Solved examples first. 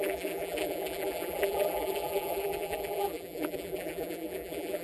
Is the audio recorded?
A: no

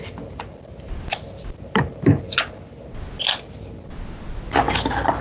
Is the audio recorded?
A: yes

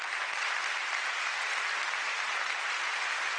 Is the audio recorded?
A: no